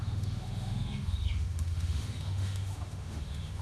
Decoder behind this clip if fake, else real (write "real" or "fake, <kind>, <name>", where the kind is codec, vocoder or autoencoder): fake, autoencoder, DAC-VAE